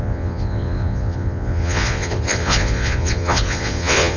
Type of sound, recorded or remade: remade